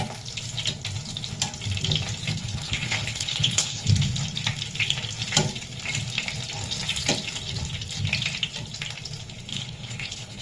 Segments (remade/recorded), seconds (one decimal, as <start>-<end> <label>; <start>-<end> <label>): 0.0-2.4 recorded; 2.4-3.9 remade; 3.9-9.5 recorded; 9.5-10.4 remade